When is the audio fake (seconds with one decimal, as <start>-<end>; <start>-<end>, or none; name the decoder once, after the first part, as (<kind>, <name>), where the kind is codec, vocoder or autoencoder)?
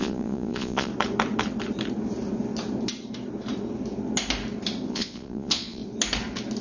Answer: 0.0-0.9 (vocoder, Vocos); 4.9-5.8